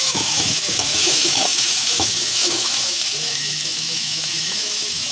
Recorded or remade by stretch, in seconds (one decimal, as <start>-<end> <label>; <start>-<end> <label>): 0.0-5.1 remade